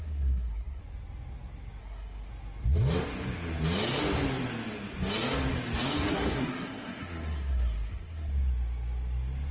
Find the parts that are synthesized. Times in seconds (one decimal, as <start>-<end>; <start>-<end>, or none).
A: 0.0-0.8; 1.8-2.3; 6.1-8.3